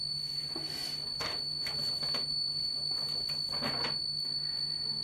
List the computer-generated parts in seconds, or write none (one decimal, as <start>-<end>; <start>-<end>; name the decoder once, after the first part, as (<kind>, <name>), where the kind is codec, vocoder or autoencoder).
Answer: none